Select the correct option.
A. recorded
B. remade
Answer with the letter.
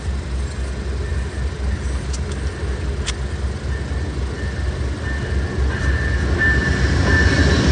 A